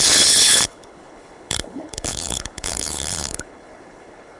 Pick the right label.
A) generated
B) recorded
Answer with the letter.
A